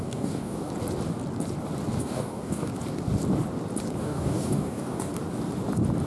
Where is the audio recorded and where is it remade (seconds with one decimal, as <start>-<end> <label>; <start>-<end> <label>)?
0.0-0.7 remade; 0.7-2.0 recorded; 2.0-2.7 remade; 2.7-4.0 recorded; 4.0-5.1 remade; 5.1-6.1 recorded